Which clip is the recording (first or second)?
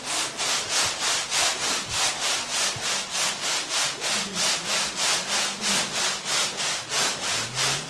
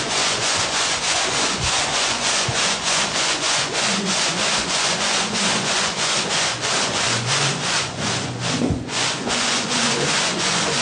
first